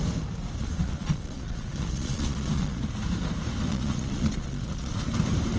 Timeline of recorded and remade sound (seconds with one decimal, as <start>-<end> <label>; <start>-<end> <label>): 0.0-0.6 recorded; 0.6-2.8 remade; 2.8-3.7 recorded; 3.7-5.0 remade; 5.0-5.6 recorded